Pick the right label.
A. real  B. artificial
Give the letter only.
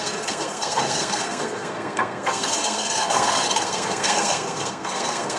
B